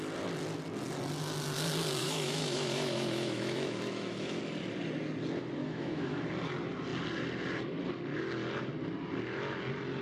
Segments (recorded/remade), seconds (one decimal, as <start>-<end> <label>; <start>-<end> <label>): 0.0-2.0 recorded; 2.0-4.4 remade; 4.4-5.6 recorded; 5.6-6.3 remade; 6.3-10.0 recorded